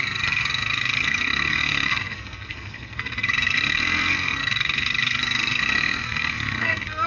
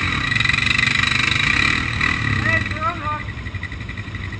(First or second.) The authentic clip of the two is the second